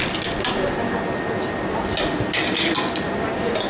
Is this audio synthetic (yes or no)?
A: no